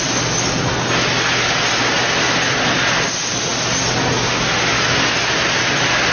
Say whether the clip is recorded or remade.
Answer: recorded